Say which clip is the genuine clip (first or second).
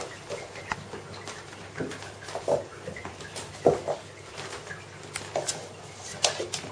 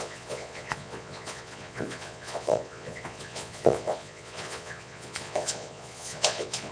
first